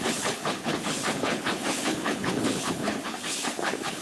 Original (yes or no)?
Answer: no